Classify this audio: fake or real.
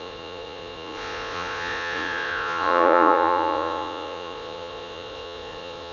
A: fake